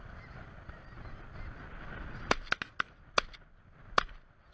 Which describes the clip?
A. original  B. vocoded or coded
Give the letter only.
A